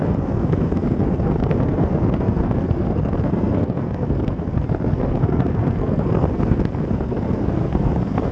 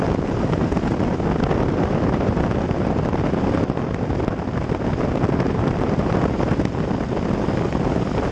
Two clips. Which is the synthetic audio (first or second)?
first